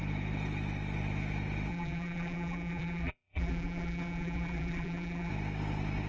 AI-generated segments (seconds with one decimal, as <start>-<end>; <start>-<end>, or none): 1.7-5.3